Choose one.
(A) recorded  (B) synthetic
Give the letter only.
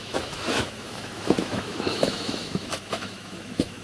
B